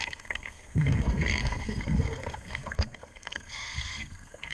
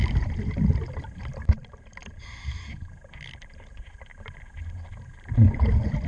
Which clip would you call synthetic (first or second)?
first